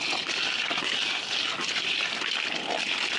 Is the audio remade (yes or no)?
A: no